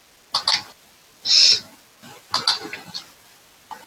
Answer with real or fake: real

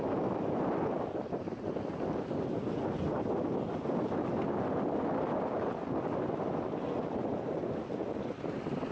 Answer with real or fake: real